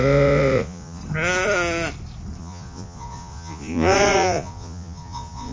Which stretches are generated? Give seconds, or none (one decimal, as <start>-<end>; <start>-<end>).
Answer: 0.0-1.0; 2.4-5.5